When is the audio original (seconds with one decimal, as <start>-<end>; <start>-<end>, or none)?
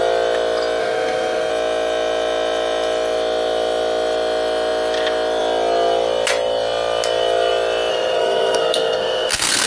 0.0-0.8; 1.5-7.9